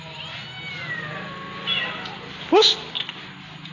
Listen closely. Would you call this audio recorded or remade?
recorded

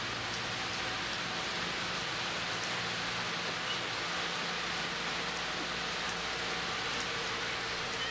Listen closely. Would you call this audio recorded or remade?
recorded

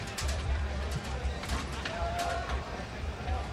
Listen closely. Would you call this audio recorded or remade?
remade